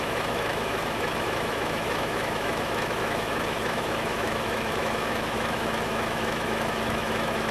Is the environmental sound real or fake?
fake